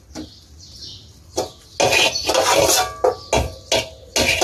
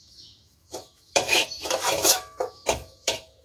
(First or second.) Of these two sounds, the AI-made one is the second